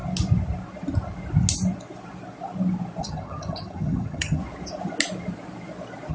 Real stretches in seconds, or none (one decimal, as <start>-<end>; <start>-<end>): 0.0-3.0; 4.4-6.1